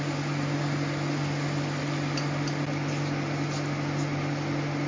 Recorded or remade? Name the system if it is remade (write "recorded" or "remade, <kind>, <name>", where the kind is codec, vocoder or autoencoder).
recorded